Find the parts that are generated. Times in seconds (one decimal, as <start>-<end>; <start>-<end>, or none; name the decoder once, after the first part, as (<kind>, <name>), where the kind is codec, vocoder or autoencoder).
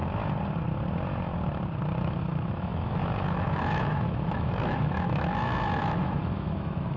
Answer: 2.0-7.0 (autoencoder, DAC-VAE)